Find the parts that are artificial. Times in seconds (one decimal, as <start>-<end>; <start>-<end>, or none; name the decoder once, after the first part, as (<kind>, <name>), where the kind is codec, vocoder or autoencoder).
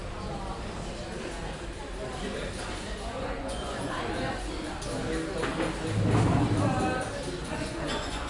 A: 3.1-3.9 (vocoder, Vocos); 7.4-8.3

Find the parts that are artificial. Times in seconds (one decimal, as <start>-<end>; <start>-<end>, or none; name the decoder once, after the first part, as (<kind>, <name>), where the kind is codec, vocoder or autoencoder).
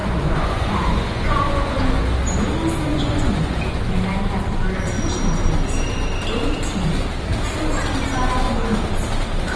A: 0.0-1.8 (vocoder, Vocos); 2.9-4.0